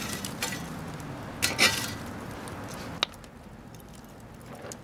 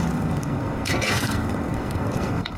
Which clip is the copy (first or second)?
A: second